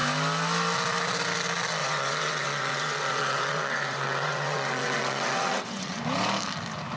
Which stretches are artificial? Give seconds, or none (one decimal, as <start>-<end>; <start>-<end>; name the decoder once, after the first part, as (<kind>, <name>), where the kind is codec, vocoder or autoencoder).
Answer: 1.8-6.0 (vocoder, WaveNeXt)